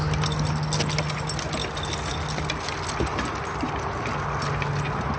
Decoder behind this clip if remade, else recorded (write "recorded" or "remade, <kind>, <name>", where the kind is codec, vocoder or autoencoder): recorded